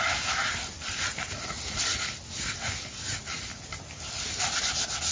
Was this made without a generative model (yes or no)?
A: yes